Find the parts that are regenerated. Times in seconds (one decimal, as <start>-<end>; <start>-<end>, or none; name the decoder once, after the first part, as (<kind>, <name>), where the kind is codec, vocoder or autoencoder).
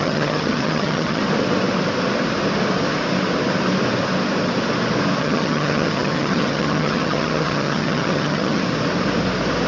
0.0-1.2 (vocoder, HiFi-GAN); 5.2-8.6